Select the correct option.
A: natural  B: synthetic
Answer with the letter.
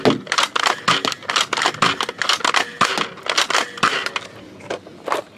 A